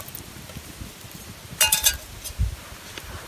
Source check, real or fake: real